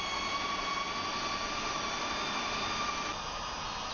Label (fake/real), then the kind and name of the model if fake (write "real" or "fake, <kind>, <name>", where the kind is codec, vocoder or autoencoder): real